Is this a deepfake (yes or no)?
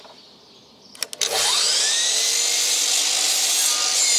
no